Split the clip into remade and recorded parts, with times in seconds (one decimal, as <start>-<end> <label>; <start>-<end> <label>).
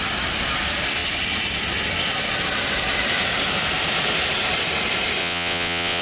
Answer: 0.0-5.2 recorded; 5.2-6.0 remade